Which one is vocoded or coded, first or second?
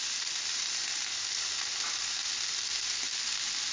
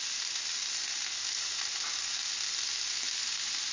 first